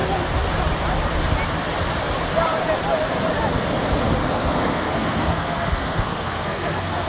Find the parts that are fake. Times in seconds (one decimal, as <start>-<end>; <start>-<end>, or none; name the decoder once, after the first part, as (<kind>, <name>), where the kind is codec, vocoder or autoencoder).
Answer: 4.3-7.1 (codec, SNAC)